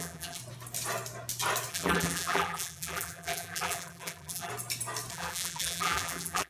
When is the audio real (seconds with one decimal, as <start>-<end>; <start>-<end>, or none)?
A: 0.4-1.7; 4.5-5.1